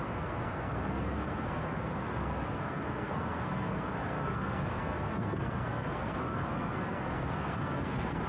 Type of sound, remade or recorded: remade